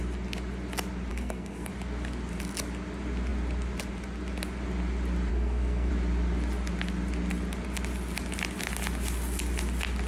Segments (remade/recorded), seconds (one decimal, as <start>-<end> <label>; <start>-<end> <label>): 0.0-1.1 recorded; 1.1-1.7 remade; 1.7-5.3 recorded; 5.3-5.9 remade; 5.9-10.1 recorded